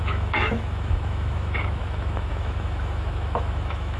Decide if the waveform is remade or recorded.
remade